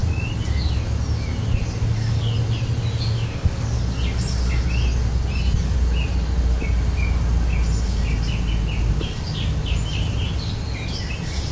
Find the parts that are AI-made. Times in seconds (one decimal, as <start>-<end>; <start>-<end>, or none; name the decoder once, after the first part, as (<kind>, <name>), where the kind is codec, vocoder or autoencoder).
3.1-3.8 (codec, DAC)